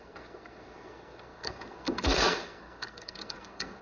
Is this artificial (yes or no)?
yes